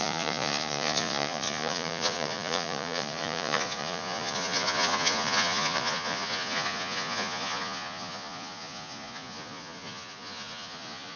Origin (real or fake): fake